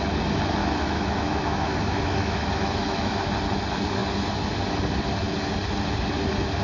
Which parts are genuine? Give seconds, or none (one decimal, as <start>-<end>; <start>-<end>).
0.0-0.6; 3.3-6.6